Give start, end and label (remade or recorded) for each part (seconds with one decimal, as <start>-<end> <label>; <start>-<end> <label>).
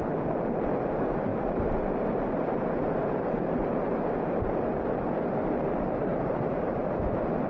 0.0-1.3 recorded; 1.3-4.6 remade; 4.6-6.1 recorded; 6.1-6.7 remade; 6.7-7.5 recorded